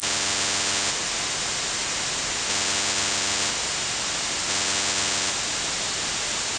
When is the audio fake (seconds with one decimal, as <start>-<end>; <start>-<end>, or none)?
0.0-0.9; 2.5-3.5; 4.5-5.3